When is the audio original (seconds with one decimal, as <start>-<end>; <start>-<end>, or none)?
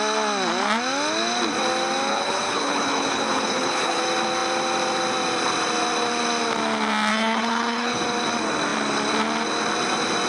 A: 0.0-2.1; 4.0-7.1; 8.0-10.3